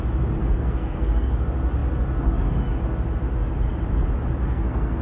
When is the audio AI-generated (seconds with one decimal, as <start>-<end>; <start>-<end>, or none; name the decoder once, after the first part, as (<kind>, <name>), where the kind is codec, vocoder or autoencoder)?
0.4-1.3 (codec, SNAC); 4.4-5.0

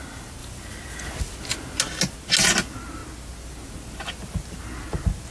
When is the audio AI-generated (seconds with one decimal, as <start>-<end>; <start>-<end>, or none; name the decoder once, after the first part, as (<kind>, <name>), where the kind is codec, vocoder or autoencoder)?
none